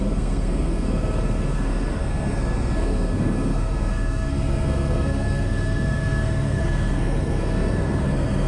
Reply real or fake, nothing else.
fake